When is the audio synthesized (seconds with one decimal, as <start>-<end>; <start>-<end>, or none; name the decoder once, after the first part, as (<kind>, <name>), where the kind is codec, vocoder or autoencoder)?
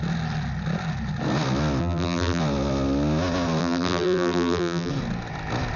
1.8-2.4 (vocoder, BigVGAN v2); 3.6-4.9